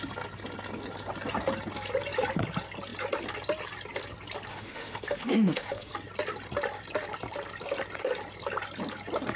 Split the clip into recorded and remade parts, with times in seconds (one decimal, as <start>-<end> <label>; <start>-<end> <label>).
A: 0.0-4.5 recorded; 4.5-5.9 remade; 5.9-9.4 recorded